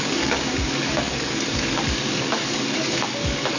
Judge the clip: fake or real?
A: fake